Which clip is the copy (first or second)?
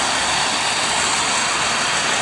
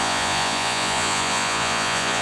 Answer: second